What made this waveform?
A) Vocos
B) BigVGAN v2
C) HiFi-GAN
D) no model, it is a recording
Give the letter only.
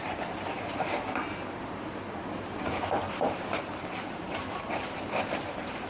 B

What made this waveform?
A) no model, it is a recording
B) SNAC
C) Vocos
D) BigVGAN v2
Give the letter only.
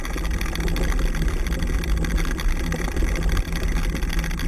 A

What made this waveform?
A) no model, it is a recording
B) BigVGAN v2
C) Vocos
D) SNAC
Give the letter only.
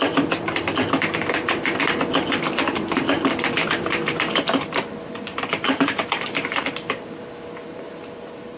B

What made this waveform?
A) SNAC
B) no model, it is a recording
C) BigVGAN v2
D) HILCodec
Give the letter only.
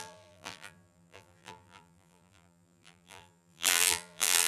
C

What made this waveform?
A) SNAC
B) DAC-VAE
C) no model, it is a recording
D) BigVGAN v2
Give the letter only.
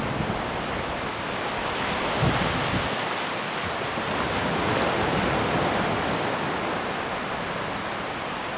C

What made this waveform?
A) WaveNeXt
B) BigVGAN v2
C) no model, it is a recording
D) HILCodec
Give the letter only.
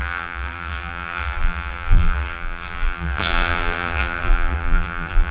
B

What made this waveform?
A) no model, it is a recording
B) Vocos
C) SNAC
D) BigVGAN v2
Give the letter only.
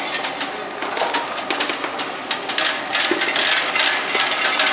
A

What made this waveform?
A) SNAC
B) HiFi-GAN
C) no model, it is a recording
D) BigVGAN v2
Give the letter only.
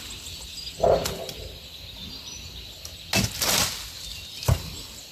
C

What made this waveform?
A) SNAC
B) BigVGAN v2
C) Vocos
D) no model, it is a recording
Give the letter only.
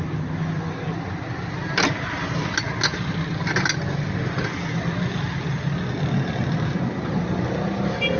D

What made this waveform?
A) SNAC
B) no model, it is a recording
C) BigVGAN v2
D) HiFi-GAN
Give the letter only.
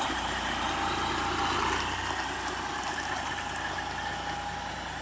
B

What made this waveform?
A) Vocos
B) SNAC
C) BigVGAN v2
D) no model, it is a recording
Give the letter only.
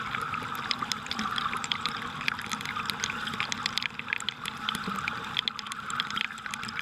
D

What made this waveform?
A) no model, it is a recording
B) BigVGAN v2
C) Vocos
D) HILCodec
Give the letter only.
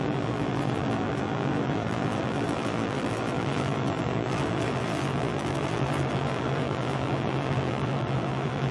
B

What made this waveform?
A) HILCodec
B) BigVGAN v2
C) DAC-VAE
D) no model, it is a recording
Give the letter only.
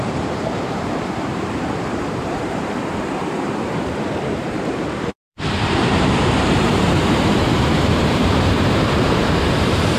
B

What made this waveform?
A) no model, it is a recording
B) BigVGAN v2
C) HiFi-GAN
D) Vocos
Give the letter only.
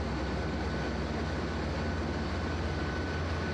A